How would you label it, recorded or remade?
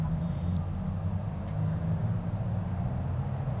recorded